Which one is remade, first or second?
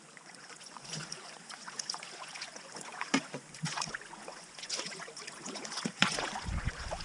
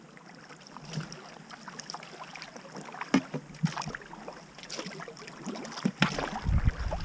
first